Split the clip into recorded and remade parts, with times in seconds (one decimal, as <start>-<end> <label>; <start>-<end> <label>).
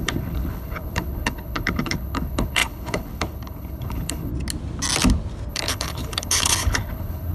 0.0-4.3 remade; 4.3-5.5 recorded; 5.5-7.3 remade